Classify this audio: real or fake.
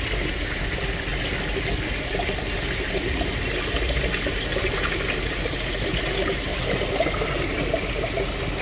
real